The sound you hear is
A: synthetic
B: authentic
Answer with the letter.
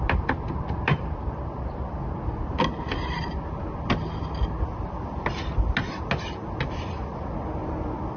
B